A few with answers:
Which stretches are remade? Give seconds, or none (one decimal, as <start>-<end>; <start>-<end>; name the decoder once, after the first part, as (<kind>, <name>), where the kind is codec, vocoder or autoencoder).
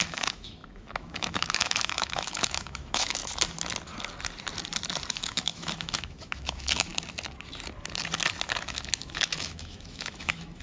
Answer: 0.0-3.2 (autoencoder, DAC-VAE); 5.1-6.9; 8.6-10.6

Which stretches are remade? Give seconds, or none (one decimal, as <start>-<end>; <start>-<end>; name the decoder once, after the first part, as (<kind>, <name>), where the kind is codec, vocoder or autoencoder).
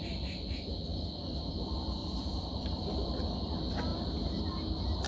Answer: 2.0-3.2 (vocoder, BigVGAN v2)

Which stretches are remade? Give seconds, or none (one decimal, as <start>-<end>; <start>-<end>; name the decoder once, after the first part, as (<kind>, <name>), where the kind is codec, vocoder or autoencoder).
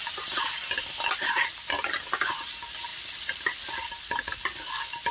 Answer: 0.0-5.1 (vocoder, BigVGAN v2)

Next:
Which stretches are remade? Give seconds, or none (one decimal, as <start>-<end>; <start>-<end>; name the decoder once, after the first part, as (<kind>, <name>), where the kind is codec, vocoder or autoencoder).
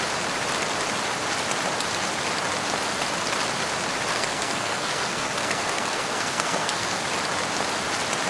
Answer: 4.1-7.0 (codec, SNAC)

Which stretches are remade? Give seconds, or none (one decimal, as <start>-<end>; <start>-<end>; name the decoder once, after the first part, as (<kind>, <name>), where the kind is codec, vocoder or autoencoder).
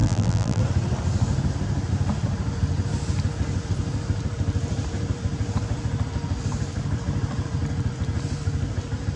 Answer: 0.0-0.6 (vocoder, BigVGAN v2)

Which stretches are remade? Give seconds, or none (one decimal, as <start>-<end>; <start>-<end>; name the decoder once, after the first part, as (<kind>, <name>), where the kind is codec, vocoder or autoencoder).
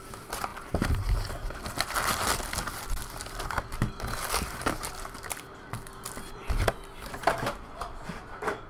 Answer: none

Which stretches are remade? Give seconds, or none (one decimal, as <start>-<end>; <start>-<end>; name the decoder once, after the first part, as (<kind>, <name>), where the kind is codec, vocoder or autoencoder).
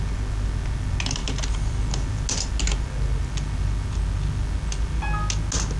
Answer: none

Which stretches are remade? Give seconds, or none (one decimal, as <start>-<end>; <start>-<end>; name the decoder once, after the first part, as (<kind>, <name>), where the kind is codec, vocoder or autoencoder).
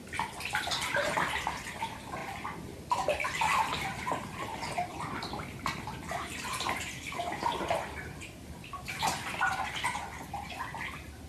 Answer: none